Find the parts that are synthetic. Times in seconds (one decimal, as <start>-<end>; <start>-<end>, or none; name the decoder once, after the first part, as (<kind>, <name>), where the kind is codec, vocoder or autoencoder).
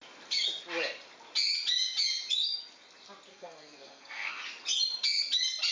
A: 3.3-4.4 (codec, SNAC)